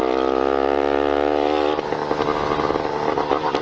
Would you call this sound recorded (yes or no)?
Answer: yes